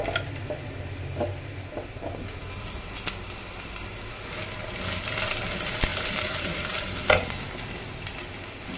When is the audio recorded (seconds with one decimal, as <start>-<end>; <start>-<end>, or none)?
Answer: 0.0-5.9